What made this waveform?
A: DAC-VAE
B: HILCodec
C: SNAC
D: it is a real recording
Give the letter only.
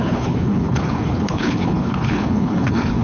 B